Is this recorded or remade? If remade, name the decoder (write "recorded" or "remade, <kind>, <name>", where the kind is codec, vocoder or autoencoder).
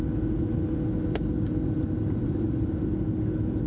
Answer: recorded